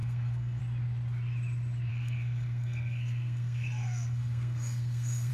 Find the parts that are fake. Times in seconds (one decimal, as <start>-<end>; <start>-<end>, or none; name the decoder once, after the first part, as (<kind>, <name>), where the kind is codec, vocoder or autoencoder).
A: 0.0-0.6 (codec, SNAC); 1.9-5.3